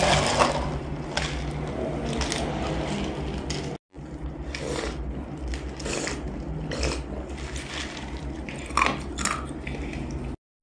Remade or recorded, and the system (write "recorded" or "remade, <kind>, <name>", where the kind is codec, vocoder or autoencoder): recorded